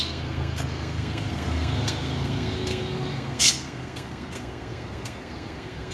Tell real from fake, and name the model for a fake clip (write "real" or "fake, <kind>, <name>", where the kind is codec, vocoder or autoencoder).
fake, codec, SNAC